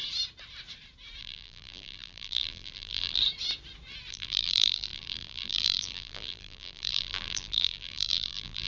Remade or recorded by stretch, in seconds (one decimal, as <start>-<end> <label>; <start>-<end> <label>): 0.0-1.2 recorded; 1.2-3.2 remade; 3.2-4.1 recorded; 4.1-8.7 remade